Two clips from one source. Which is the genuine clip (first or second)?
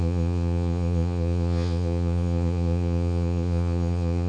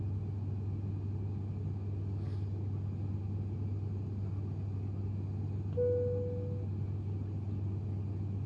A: second